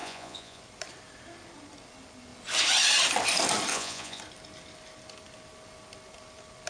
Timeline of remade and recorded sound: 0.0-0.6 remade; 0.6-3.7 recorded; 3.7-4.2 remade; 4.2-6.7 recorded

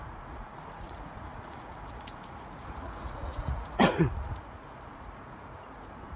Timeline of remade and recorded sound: 0.0-6.2 remade

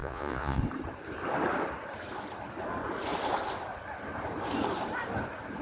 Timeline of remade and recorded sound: 0.0-0.6 remade; 0.6-5.6 recorded

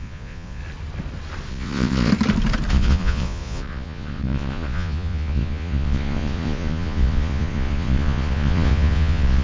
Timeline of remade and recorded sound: 0.0-0.6 remade; 0.6-1.5 recorded; 1.5-2.1 remade; 2.1-2.7 recorded; 2.7-9.4 remade

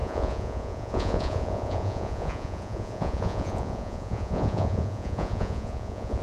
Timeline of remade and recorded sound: 0.0-6.2 remade

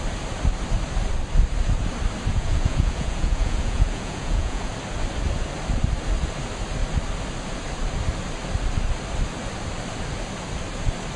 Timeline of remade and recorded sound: 0.0-2.3 recorded; 2.3-4.7 remade; 4.7-11.2 recorded

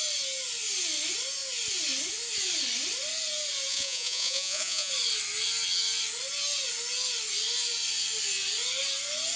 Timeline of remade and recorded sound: 0.0-3.7 recorded; 3.7-4.9 remade; 4.9-9.4 recorded